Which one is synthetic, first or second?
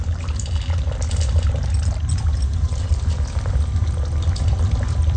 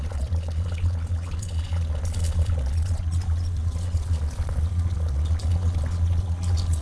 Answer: second